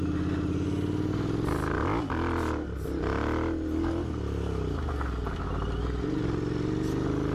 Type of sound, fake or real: real